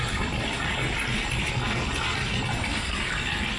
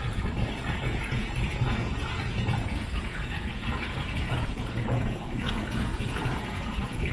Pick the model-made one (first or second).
second